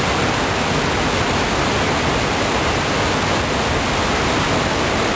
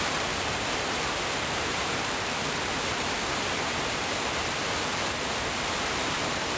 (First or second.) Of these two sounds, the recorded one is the first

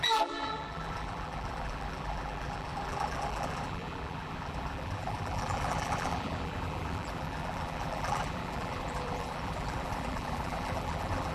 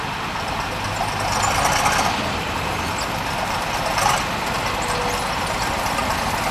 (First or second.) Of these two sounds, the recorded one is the second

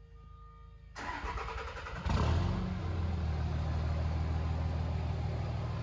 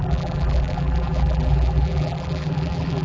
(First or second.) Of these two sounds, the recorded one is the first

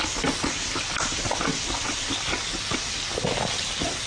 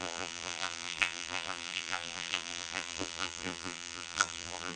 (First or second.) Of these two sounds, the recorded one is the first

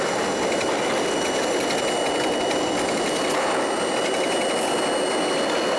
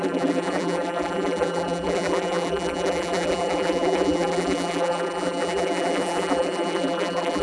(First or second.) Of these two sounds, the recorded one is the first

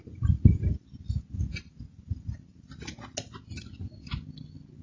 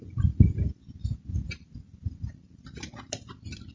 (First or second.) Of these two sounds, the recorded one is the first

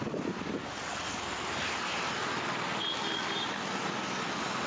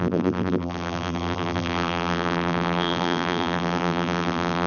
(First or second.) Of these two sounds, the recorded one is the first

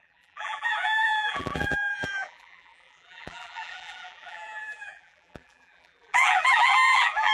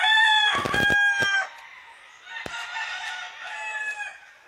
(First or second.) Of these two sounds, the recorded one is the second